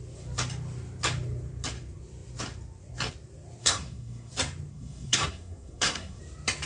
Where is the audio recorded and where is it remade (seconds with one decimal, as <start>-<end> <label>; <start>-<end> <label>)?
0.0-3.6 recorded; 3.6-4.3 remade; 4.3-4.7 recorded; 4.7-6.2 remade; 6.2-6.7 recorded